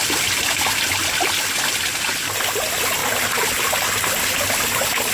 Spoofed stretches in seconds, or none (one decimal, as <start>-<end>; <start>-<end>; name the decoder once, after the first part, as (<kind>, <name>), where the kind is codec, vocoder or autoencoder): none